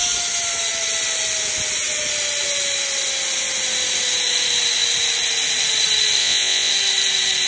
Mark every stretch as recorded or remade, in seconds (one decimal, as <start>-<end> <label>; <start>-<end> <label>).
0.0-6.2 recorded; 6.2-6.7 remade; 6.7-7.5 recorded